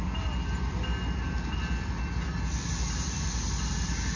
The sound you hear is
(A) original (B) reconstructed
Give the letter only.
A